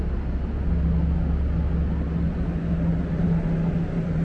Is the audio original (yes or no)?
yes